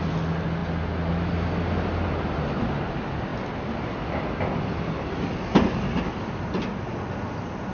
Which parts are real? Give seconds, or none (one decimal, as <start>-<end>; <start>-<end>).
0.0-7.7